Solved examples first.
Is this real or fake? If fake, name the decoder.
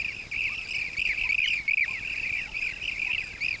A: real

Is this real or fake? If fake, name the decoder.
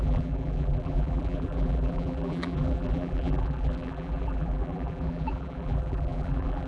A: fake, vocoder, BigVGAN v2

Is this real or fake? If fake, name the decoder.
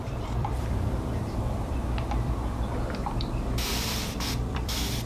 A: fake, vocoder, BigVGAN v2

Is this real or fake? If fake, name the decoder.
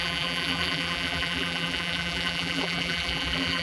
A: fake, vocoder, BigVGAN v2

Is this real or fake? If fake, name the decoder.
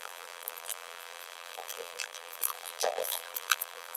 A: fake, vocoder, BigVGAN v2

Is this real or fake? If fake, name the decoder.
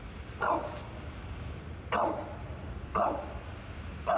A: real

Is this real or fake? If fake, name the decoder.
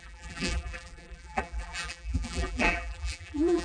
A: fake, vocoder, BigVGAN v2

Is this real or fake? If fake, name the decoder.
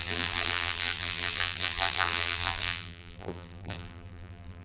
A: fake, vocoder, BigVGAN v2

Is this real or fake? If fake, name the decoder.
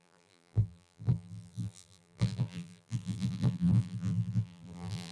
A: fake, vocoder, BigVGAN v2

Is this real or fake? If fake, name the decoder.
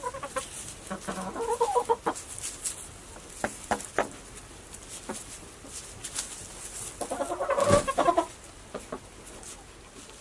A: real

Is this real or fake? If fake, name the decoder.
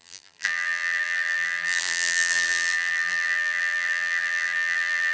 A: fake, vocoder, BigVGAN v2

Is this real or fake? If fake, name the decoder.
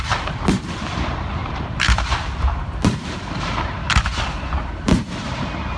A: fake, vocoder, BigVGAN v2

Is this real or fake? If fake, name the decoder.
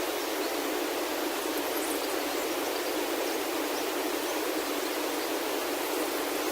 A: real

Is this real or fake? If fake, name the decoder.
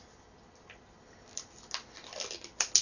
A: real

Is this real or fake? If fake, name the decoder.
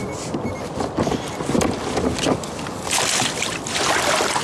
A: real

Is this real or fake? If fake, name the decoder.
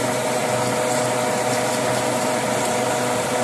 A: real